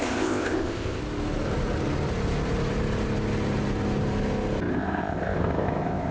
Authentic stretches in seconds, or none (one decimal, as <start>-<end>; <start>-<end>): 1.0-4.7